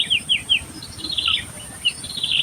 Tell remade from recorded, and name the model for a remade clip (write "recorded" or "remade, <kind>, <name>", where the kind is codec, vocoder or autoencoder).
remade, vocoder, BigVGAN v2